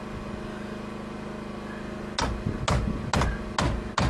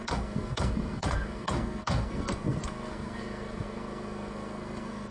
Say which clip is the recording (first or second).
first